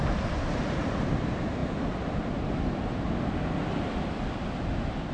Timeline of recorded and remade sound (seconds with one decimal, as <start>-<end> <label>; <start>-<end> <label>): 0.0-5.1 recorded